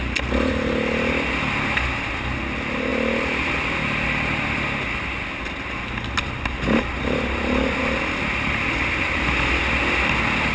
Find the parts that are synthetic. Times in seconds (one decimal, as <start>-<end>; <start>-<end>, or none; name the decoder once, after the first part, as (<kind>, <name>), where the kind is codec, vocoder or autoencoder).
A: none